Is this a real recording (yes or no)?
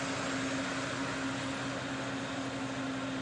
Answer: yes